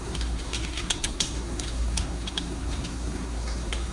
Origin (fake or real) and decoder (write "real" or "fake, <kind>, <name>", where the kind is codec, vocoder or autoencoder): fake, codec, SNAC